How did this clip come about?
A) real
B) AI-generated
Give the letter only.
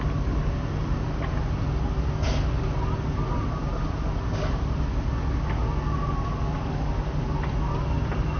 A